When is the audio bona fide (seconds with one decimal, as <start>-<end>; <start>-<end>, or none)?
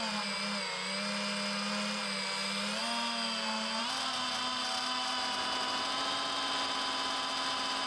0.0-7.9